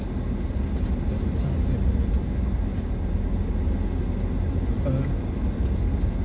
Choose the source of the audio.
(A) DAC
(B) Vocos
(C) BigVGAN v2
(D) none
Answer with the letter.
D